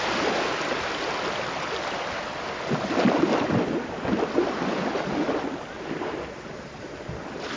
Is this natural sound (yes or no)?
yes